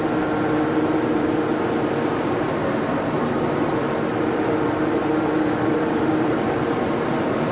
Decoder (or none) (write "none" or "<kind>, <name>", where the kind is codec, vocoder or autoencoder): vocoder, BigVGAN v2